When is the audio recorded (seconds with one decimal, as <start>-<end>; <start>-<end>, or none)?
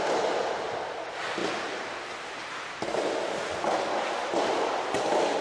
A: 0.0-5.4